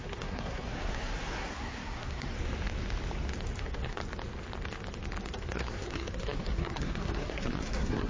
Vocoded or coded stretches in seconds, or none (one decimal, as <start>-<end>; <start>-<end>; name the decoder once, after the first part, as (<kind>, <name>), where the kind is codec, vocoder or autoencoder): 0.0-2.3 (codec, SNAC); 3.6-4.0; 5.2-8.1